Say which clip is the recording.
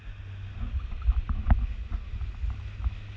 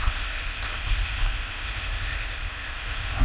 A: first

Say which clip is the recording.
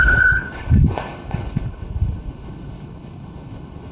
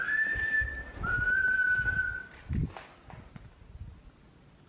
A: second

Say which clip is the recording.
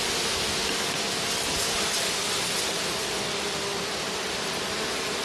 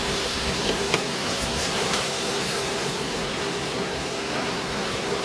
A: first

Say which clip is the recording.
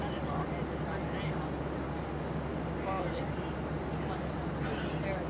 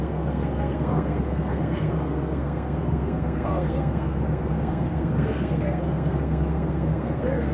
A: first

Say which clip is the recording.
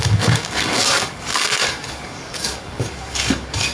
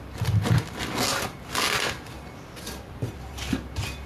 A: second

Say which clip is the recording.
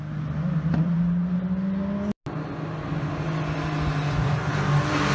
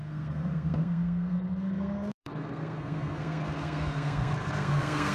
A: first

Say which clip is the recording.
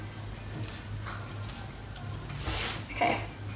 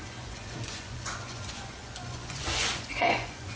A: first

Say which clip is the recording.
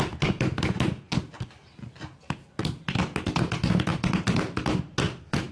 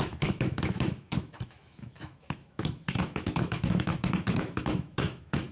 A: first